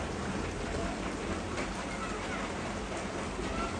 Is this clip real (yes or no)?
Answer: yes